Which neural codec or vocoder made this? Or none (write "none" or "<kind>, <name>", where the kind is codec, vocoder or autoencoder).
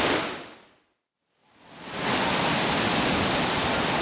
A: none